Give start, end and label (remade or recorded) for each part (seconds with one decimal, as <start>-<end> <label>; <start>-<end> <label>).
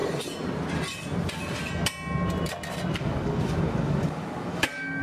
0.0-3.0 recorded; 3.0-5.0 remade